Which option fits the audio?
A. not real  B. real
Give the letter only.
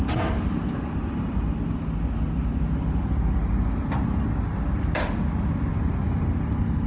B